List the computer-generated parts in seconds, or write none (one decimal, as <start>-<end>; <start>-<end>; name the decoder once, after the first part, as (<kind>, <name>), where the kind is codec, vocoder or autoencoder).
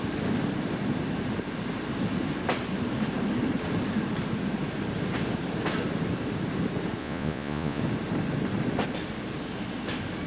7.0-7.8 (vocoder, Vocos)